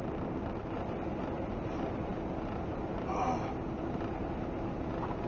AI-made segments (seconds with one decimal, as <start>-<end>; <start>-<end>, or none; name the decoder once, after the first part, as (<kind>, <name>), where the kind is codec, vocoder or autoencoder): none